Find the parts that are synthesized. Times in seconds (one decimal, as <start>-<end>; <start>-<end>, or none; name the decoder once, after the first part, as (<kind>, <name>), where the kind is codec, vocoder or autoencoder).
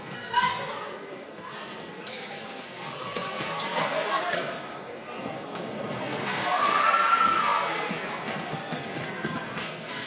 0.0-10.1 (codec, SNAC)